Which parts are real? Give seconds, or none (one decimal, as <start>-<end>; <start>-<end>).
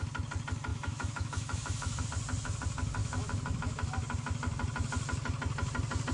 0.0-0.7; 2.0-3.0; 3.9-6.1